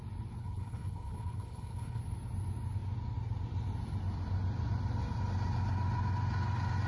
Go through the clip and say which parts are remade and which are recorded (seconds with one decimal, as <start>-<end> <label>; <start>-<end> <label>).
0.0-0.4 recorded; 0.4-2.0 remade; 2.0-6.9 recorded